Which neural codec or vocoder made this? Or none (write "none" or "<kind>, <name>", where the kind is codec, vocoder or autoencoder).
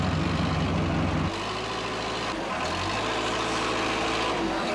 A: none